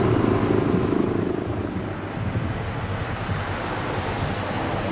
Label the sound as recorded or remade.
recorded